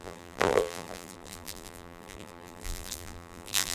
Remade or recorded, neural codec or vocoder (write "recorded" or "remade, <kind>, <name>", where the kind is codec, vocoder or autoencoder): remade, vocoder, BigVGAN v2